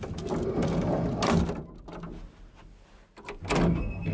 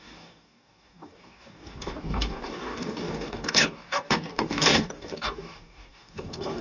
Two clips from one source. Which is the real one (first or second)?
first